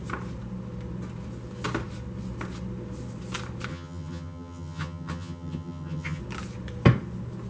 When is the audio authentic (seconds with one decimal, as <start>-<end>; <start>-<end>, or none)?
0.0-3.7; 6.2-7.5